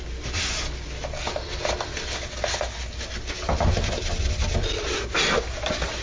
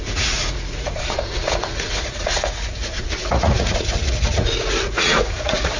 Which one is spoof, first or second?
second